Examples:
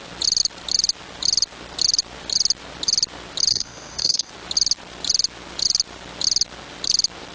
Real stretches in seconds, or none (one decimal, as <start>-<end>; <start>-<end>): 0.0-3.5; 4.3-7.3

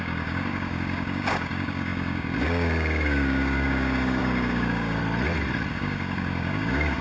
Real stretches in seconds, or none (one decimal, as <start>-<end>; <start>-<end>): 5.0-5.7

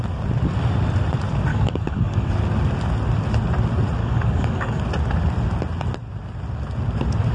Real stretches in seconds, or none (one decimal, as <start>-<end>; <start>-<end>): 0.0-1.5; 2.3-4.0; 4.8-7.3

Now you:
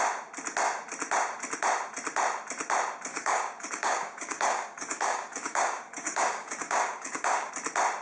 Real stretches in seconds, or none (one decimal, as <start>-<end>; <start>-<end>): 0.0-3.1; 7.5-8.0

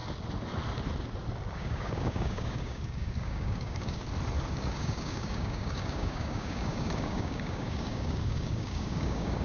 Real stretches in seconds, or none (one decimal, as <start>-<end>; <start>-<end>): 0.0-1.5; 4.0-4.5